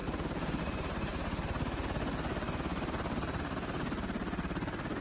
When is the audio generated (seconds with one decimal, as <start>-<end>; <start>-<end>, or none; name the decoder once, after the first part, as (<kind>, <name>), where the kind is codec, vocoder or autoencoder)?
none